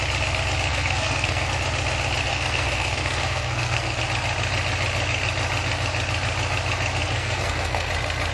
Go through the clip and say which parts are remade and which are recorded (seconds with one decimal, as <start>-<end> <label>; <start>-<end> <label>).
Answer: 0.0-0.7 recorded; 0.7-1.5 remade; 1.5-2.3 recorded; 2.3-4.0 remade; 4.0-7.0 recorded; 7.0-7.9 remade; 7.9-8.3 recorded